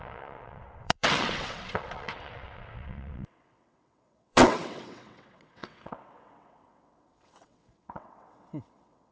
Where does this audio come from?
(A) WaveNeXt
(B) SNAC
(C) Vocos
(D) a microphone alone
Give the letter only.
A